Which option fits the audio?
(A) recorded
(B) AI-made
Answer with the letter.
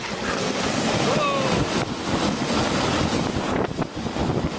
A